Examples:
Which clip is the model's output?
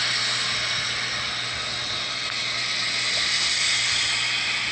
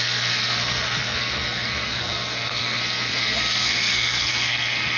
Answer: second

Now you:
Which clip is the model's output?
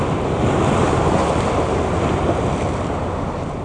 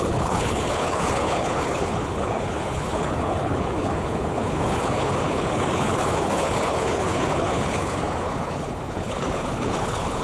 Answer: second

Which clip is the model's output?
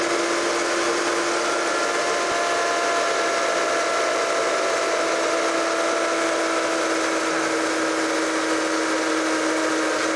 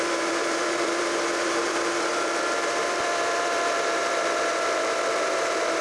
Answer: second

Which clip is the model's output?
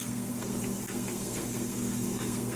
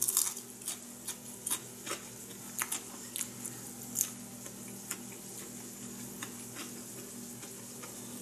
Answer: first